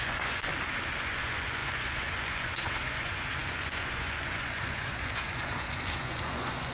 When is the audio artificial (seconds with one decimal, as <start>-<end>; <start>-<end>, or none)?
0.0-0.5; 1.0-6.7